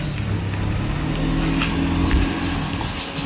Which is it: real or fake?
real